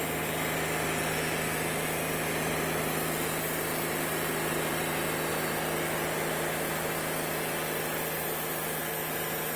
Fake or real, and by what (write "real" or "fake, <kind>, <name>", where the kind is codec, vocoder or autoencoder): real